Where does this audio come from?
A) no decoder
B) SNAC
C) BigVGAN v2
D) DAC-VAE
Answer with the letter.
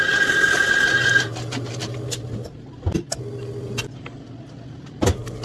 A